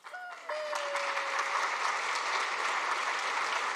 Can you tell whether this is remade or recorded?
recorded